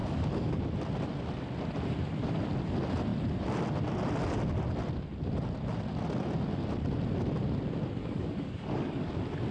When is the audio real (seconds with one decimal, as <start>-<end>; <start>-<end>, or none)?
0.6-8.0; 9.1-9.5